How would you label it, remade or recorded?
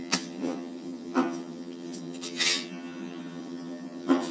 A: remade